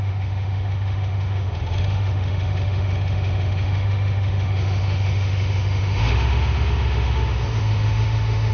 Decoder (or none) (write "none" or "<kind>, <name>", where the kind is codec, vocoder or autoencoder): autoencoder, DAC-VAE